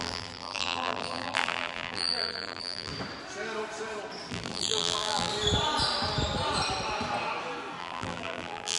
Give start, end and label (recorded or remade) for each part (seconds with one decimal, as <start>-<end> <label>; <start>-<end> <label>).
0.0-2.9 remade; 2.9-4.3 recorded; 4.3-5.3 remade; 5.3-7.8 recorded; 7.8-8.8 remade

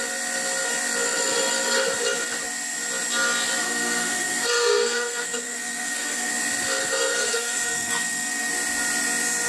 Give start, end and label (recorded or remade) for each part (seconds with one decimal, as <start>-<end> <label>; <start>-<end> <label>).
0.0-3.6 recorded; 3.6-6.3 remade; 6.3-6.8 recorded; 6.8-8.5 remade; 8.5-9.5 recorded